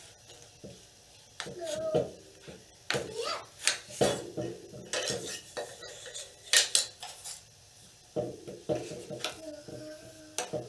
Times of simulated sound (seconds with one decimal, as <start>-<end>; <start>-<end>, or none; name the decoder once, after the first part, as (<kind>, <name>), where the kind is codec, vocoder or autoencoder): 9.7-10.2 (codec, DAC)